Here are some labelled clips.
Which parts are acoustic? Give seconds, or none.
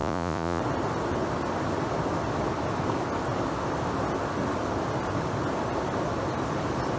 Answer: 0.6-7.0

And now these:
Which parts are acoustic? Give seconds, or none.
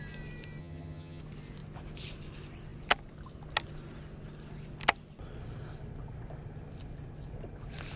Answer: 0.0-0.6; 1.2-8.0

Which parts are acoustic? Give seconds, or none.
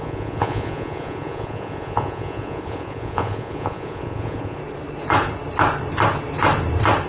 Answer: 4.6-7.1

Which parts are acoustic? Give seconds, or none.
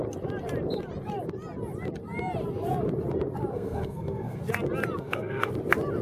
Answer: 0.0-3.5; 4.4-5.0; 5.5-6.0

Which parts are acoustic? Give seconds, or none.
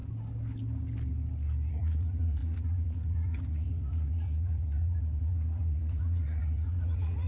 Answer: 0.0-1.7